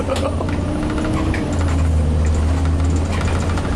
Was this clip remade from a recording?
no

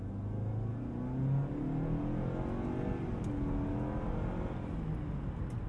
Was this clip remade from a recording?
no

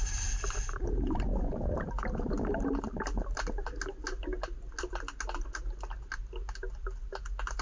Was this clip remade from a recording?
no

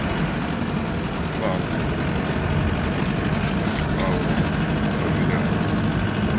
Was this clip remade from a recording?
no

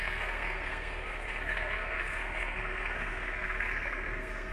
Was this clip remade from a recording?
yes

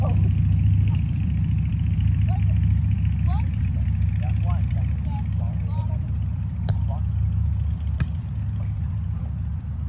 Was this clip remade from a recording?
yes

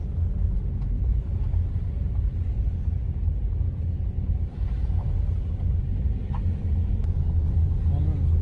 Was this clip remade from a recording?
no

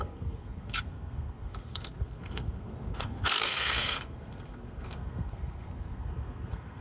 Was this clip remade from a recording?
yes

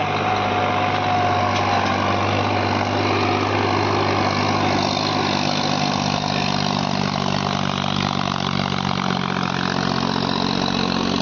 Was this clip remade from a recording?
no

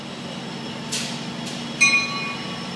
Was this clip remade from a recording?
no